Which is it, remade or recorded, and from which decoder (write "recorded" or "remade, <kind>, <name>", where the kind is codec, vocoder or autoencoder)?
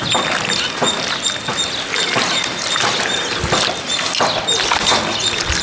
recorded